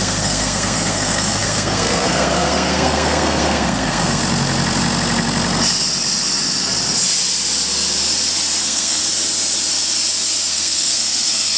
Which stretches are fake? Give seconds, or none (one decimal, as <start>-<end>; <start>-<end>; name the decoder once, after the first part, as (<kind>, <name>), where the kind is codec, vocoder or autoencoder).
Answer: 0.0-4.2 (codec, SNAC); 8.6-9.0; 10.5-11.6